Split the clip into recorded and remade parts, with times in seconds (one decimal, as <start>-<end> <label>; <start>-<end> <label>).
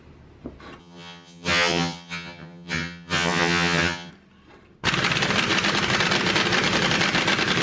0.0-0.8 recorded; 0.8-4.1 remade; 4.1-7.6 recorded